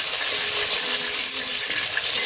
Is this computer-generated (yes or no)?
no